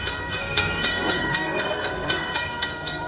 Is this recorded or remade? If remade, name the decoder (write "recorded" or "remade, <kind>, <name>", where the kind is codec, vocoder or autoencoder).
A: remade, codec, SNAC